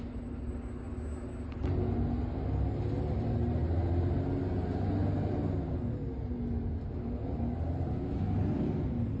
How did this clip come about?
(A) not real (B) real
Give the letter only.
B